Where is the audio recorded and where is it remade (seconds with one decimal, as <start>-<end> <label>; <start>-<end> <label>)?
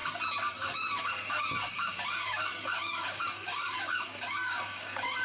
0.0-0.5 recorded; 0.5-5.2 remade